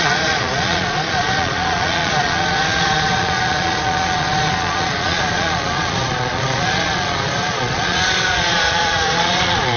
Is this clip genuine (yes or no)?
no